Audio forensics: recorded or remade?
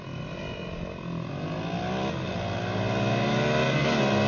recorded